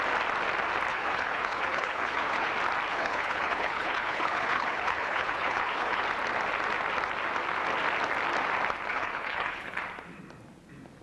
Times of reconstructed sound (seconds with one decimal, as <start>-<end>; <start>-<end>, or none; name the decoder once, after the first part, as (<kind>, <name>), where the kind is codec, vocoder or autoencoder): 0.9-2.5 (codec, HILCodec); 2.9-6.0; 8.9-9.8